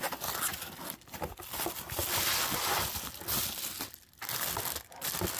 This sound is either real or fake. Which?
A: real